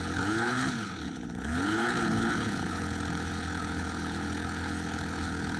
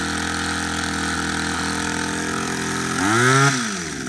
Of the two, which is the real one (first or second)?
second